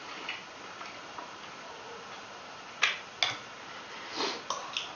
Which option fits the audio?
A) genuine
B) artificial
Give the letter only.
A